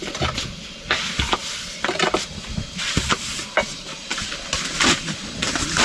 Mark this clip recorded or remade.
recorded